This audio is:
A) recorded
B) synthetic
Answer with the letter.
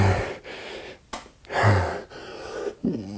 A